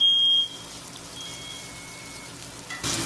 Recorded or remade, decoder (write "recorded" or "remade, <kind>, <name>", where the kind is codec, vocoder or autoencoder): recorded